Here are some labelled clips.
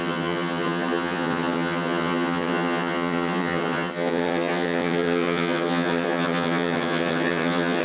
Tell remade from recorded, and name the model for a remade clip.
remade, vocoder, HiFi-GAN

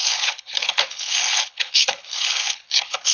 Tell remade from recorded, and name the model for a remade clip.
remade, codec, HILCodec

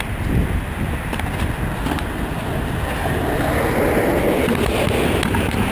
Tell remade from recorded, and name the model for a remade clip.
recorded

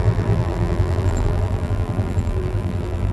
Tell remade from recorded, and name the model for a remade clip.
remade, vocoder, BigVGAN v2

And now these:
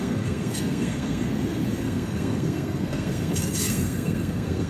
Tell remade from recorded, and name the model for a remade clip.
remade, codec, SNAC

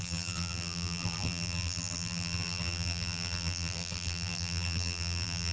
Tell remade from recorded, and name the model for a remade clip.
remade, vocoder, BigVGAN v2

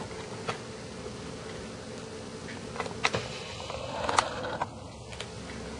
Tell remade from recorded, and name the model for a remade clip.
recorded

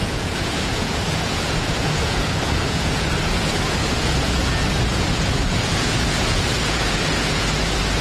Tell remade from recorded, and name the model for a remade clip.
remade, vocoder, Vocos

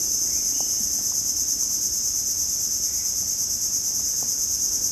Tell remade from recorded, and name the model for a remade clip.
recorded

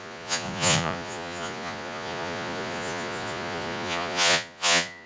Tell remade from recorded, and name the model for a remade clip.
remade, vocoder, Vocos